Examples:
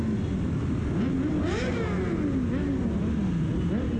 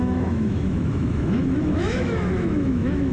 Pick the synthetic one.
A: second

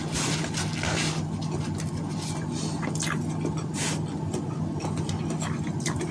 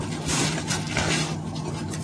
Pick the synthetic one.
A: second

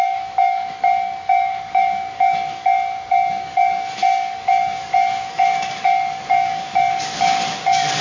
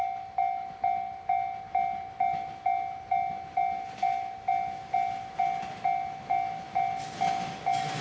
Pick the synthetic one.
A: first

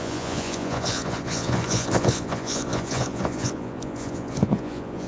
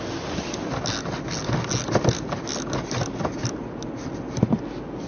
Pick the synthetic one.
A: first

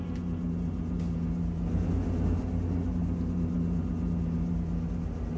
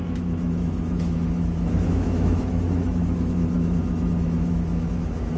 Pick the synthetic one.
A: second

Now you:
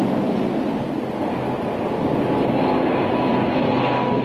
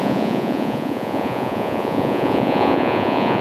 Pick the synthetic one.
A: second